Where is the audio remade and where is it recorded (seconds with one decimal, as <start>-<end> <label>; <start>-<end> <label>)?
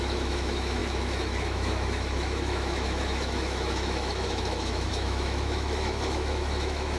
0.0-7.0 remade